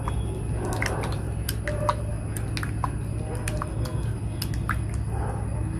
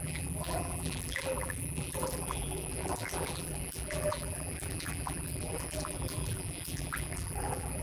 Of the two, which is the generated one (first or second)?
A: second